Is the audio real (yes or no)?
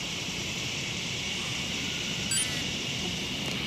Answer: yes